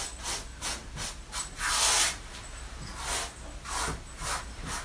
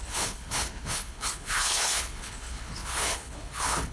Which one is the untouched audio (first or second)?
first